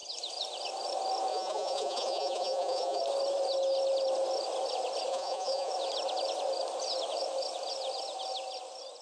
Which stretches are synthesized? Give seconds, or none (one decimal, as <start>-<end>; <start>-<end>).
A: 1.3-3.0; 5.1-5.7